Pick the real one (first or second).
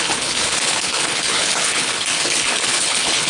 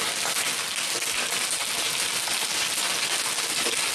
second